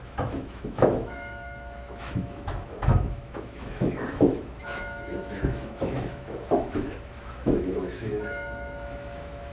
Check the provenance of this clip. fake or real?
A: fake